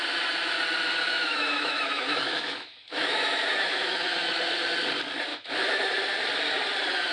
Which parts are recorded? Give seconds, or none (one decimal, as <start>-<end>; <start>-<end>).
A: 0.0-0.9; 4.3-5.3; 5.9-7.1